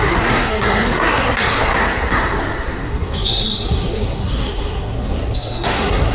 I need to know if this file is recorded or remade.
remade